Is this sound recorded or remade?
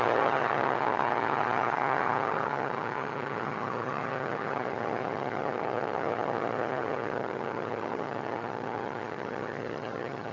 remade